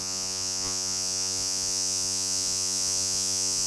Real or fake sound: fake